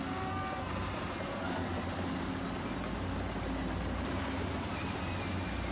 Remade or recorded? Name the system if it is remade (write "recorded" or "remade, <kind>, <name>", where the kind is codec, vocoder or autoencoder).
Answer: recorded